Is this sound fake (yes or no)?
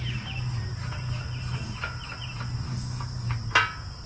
no